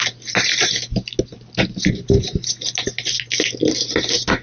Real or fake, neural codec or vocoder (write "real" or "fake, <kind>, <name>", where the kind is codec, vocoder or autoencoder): real